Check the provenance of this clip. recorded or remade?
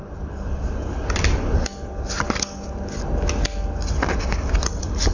recorded